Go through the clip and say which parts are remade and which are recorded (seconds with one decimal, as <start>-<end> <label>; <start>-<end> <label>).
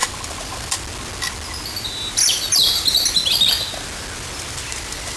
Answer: 0.0-5.2 recorded